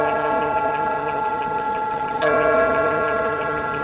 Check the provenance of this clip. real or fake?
fake